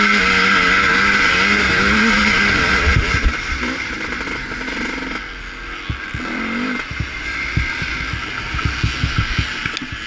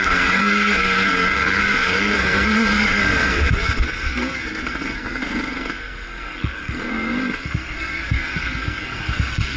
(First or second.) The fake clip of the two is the second